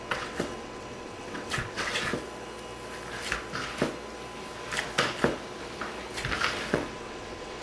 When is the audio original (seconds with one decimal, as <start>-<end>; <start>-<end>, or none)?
2.1-6.7